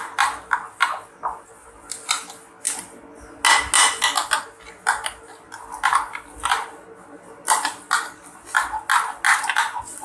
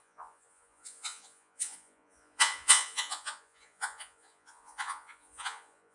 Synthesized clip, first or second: second